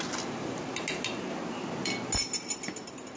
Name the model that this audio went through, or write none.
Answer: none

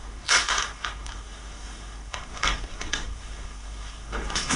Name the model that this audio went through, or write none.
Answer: codec, SNAC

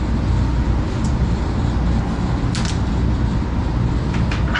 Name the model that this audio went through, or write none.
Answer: none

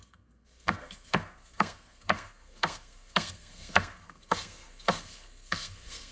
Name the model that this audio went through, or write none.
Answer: codec, SNAC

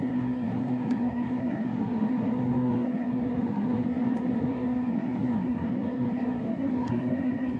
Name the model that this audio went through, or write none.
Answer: codec, SNAC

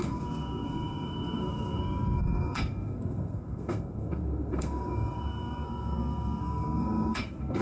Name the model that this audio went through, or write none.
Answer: codec, SNAC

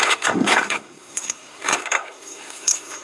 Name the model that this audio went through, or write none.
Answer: codec, SNAC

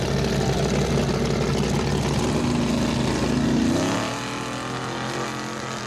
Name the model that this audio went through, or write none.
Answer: none